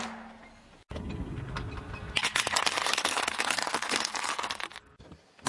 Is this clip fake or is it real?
real